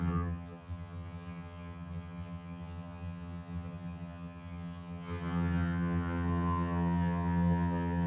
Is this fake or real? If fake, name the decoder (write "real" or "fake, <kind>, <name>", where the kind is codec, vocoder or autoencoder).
fake, vocoder, HiFi-GAN